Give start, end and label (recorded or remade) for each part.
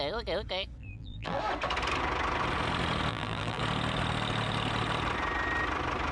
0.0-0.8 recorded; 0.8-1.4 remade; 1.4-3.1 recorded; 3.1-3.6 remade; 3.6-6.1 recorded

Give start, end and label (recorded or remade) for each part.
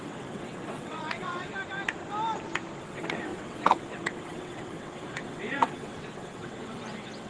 0.0-1.5 remade; 1.5-2.8 recorded; 2.8-7.3 remade